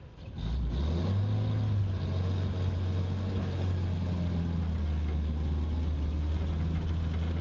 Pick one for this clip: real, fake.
real